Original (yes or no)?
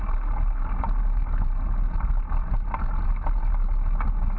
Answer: yes